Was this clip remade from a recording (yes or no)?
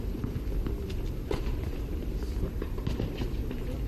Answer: no